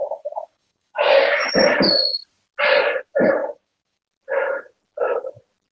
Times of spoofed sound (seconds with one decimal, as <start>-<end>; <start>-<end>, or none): 0.0-1.5; 3.4-4.0